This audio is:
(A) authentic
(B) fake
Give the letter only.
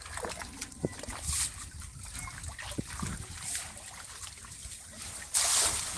A